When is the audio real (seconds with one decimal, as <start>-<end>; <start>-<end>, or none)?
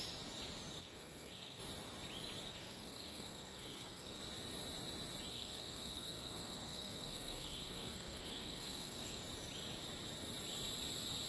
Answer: 0.0-0.8; 1.6-2.5; 4.2-5.3; 9.2-11.3